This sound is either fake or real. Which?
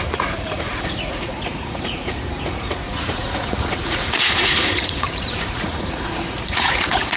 fake